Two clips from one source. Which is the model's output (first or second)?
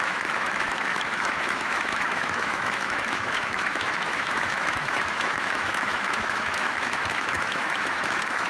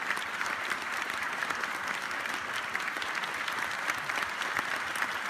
first